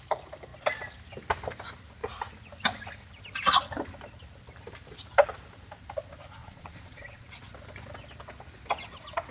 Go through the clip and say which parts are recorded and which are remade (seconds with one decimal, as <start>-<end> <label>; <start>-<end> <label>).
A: 0.0-6.4 recorded; 6.4-7.4 remade; 7.4-9.3 recorded